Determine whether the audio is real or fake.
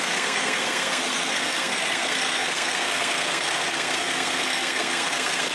fake